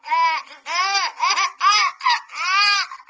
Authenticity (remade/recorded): recorded